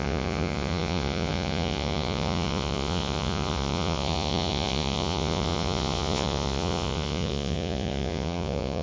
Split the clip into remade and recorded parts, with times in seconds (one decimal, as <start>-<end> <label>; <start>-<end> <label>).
0.0-8.8 remade